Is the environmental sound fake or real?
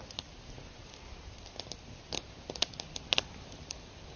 real